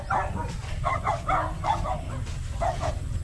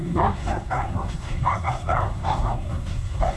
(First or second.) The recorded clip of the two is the first